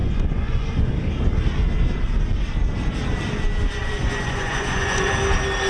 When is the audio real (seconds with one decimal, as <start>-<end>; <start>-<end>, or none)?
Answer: 0.9-3.8; 5.1-5.7